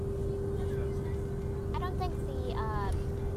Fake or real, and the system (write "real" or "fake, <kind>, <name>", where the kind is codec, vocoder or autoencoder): real